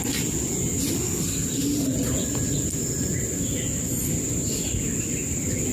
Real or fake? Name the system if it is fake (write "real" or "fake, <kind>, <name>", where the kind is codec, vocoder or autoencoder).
real